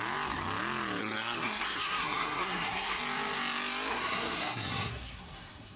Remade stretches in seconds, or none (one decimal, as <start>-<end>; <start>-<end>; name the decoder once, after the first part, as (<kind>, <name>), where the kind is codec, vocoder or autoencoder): 1.0-3.0 (codec, SNAC); 3.9-5.8